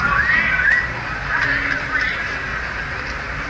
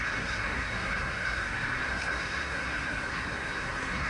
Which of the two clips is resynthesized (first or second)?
second